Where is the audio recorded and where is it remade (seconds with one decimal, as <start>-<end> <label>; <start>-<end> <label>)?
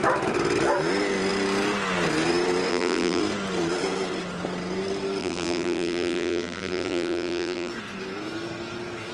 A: 0.0-2.7 recorded; 2.7-3.2 remade; 3.2-5.2 recorded; 5.2-7.7 remade; 7.7-9.1 recorded